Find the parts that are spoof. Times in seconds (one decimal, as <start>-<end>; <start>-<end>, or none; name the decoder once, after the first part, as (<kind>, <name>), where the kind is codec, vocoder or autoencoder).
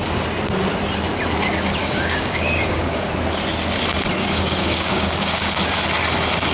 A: 1.8-3.1 (codec, DAC); 4.2-5.5